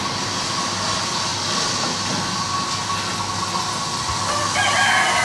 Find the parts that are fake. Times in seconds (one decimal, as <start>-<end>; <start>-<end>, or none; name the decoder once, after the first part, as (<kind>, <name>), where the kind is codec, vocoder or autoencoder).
none